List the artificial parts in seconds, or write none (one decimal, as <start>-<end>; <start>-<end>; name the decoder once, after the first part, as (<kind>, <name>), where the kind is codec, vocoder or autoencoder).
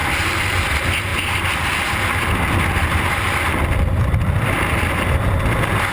none